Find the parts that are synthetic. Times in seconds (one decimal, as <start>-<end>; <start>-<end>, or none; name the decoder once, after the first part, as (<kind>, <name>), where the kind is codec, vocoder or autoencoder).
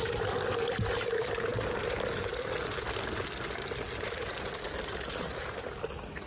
none